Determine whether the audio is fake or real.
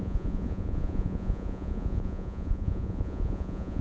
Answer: fake